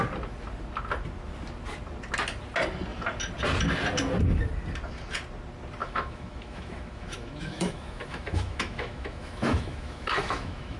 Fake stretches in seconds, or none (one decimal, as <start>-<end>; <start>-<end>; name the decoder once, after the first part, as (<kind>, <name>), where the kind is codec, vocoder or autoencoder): 5.8-10.8 (autoencoder, DAC-VAE)

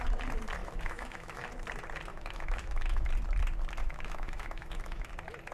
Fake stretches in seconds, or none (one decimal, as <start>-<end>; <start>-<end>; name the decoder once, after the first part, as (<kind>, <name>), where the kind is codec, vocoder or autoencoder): 0.6-1.5 (autoencoder, DAC-VAE); 2.1-3.1; 3.8-5.1

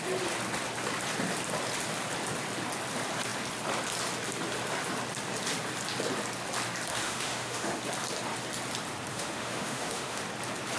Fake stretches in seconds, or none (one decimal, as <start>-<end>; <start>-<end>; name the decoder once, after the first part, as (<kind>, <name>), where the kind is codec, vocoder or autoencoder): 6.9-7.8 (autoencoder, DAC-VAE); 9.1-10.2

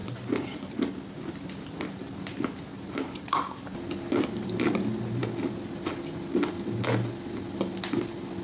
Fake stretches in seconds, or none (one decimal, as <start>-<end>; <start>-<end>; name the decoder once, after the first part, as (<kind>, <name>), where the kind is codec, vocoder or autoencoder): none